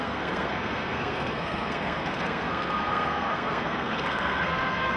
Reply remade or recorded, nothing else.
remade